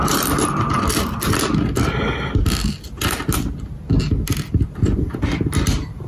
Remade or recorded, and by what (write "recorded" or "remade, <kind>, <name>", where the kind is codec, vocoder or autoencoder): recorded